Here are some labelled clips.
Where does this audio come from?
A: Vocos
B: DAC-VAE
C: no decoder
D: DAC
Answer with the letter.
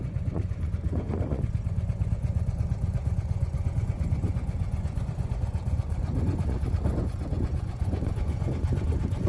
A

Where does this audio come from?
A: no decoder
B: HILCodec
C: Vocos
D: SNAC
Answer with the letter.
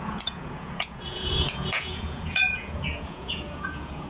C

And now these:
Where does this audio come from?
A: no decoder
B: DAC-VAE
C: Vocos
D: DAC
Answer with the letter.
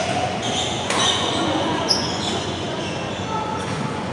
C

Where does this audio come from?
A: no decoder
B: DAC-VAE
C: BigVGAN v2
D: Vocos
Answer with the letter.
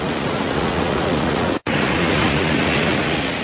D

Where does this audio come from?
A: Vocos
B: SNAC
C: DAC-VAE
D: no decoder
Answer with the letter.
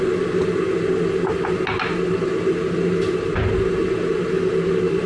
D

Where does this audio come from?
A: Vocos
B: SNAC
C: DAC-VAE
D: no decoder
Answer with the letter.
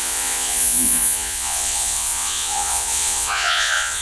A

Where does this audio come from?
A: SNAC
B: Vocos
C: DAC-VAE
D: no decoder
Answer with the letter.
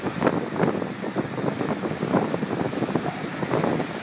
D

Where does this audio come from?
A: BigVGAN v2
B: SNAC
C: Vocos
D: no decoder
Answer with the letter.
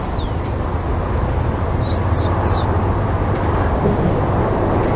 D